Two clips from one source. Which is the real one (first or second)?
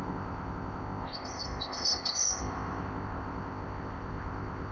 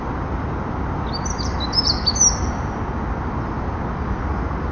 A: second